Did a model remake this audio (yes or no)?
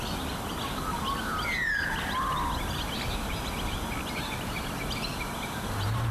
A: no